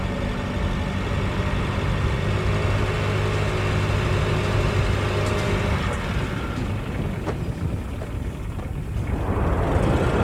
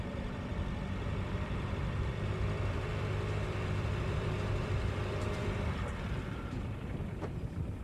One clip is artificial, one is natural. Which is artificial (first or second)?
second